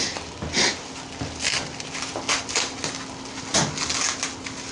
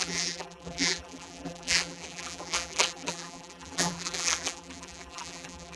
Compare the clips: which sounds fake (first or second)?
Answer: second